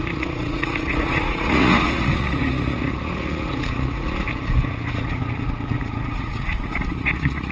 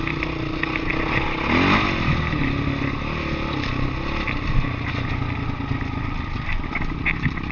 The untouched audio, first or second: second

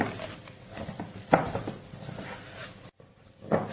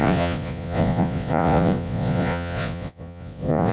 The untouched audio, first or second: first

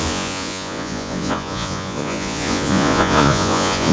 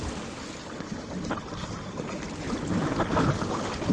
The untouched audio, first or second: second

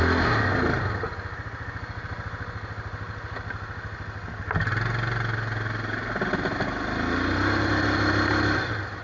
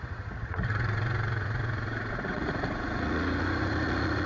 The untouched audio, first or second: first